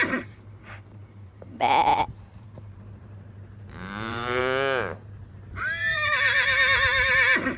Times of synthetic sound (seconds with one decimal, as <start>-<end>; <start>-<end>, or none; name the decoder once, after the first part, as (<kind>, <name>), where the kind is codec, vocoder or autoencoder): 0.0-4.4 (vocoder, BigVGAN v2); 5.3-7.6